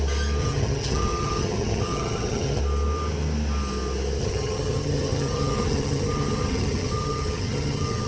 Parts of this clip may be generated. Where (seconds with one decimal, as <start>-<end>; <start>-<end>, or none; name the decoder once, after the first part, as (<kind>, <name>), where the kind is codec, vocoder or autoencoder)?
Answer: 0.4-2.6 (vocoder, HiFi-GAN); 4.2-8.1